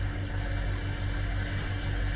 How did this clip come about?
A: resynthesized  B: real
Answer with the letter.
B